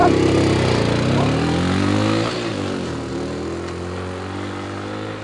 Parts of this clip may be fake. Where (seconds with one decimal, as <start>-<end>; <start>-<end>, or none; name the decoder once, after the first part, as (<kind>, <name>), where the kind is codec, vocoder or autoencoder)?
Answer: none